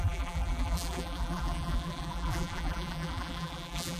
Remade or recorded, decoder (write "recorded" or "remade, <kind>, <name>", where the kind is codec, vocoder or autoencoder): remade, vocoder, BigVGAN v2